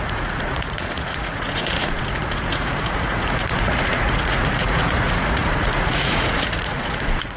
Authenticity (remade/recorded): remade